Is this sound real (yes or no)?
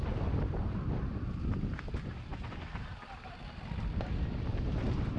yes